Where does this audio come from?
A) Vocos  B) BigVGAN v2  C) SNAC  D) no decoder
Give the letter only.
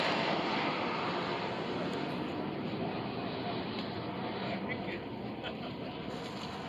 D